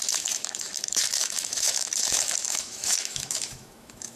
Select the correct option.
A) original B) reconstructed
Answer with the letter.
B